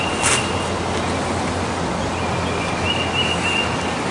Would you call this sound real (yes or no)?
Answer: yes